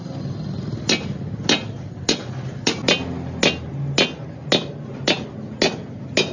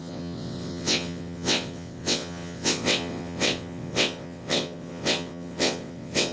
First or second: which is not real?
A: second